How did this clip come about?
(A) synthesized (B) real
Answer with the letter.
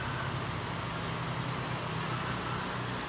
B